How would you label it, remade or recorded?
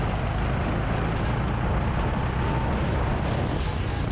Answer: recorded